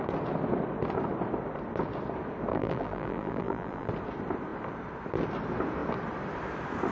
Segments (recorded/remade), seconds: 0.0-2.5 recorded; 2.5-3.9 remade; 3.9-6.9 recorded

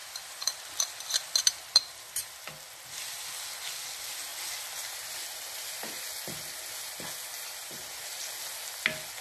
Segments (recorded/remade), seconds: 0.0-2.5 remade; 2.5-7.6 recorded; 7.6-8.2 remade; 8.2-9.2 recorded

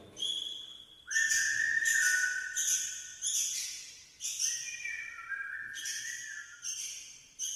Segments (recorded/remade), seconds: 0.0-7.6 recorded

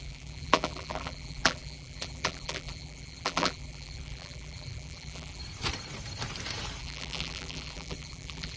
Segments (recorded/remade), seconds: 0.0-5.4 remade; 5.4-6.8 recorded; 6.8-8.6 remade

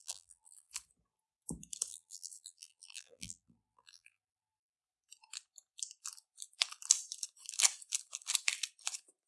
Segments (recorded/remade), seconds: 0.0-0.7 remade; 0.7-1.9 recorded; 1.9-4.7 remade; 4.7-9.3 recorded